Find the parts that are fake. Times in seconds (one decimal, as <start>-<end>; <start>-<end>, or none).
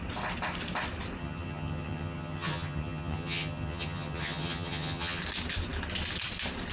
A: 1.2-5.2